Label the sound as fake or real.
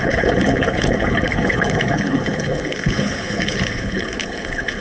fake